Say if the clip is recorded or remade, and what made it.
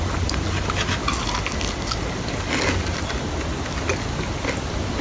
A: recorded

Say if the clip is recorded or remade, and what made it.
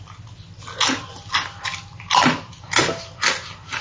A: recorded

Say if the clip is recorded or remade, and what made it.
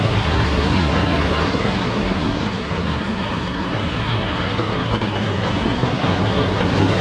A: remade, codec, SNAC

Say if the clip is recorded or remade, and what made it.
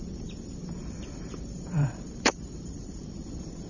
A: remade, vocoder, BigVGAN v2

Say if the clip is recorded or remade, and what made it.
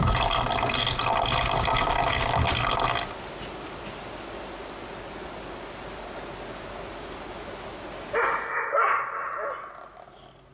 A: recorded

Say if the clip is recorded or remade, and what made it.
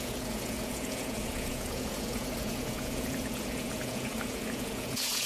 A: remade, vocoder, Vocos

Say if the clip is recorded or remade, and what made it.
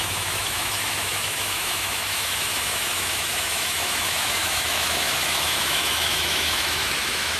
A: remade, autoencoder, DAC-VAE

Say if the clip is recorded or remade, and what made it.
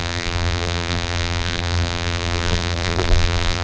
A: remade, vocoder, BigVGAN v2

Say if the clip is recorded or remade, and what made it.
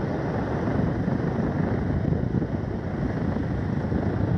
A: recorded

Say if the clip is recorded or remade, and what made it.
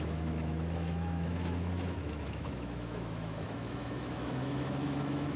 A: remade, autoencoder, DAC-VAE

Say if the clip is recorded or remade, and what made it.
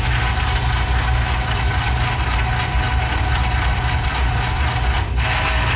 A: recorded